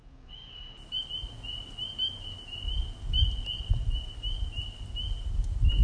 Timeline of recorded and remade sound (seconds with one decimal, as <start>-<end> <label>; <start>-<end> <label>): 0.0-5.8 recorded